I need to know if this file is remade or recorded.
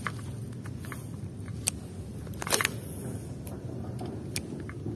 recorded